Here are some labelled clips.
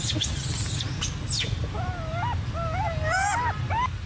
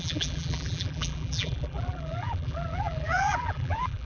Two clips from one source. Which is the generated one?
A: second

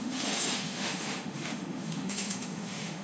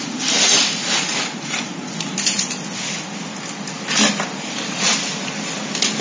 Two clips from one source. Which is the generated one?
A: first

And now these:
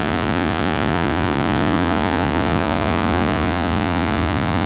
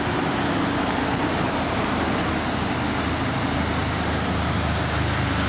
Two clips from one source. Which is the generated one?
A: first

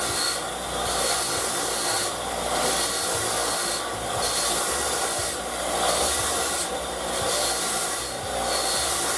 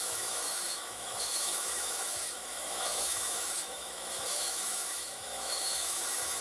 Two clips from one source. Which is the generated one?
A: second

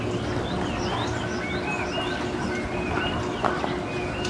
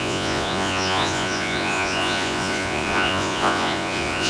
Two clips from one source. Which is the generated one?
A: second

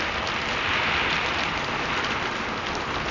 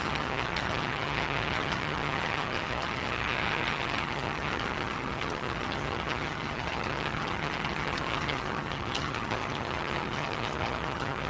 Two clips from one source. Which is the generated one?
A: second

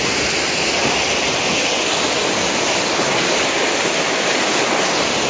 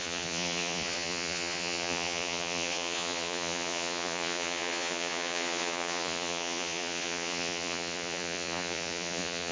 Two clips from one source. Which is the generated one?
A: second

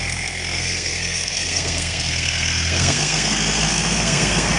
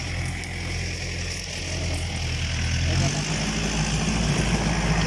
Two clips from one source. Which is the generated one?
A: first